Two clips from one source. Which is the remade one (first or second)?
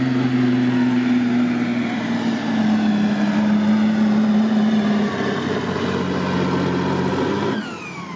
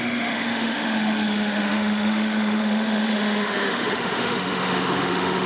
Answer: second